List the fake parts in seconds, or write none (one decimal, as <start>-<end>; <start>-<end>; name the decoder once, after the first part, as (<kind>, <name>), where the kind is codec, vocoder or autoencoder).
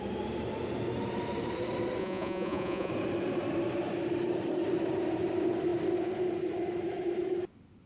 2.0-2.9 (vocoder, Vocos)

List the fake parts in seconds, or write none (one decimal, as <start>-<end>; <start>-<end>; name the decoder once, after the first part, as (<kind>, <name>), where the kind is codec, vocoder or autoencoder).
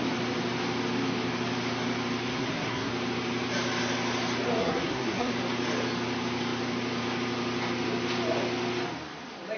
2.3-2.9 (codec, SNAC); 4.6-5.3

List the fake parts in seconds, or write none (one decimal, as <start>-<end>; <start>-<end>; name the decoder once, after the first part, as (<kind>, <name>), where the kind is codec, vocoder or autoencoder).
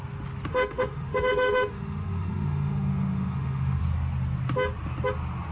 0.5-3.8 (autoencoder, DAC-VAE)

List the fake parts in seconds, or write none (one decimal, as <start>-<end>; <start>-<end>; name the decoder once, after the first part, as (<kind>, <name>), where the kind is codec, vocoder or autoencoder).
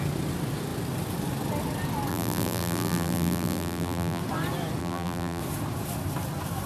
2.1-4.2 (vocoder, BigVGAN v2); 4.8-5.4